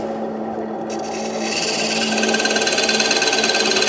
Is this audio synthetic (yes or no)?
yes